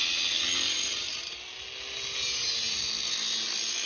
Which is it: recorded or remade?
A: recorded